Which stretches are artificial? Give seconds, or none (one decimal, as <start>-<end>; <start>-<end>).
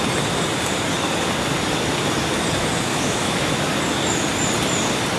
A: 2.9-3.7